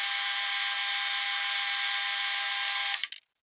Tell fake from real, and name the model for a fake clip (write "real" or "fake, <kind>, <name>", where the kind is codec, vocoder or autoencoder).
real